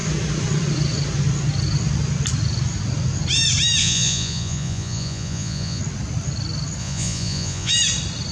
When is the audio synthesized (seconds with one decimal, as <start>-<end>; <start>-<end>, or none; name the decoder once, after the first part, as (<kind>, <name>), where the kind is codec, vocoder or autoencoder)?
3.8-5.8 (vocoder, Vocos); 6.8-7.7